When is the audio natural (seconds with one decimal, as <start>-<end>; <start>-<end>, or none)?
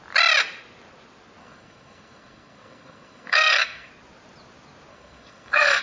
0.0-1.4; 3.9-4.9